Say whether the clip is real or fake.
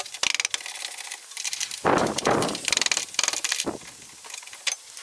real